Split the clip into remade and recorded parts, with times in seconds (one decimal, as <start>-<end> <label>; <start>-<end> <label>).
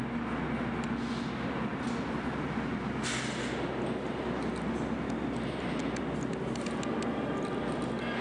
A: 0.0-8.2 recorded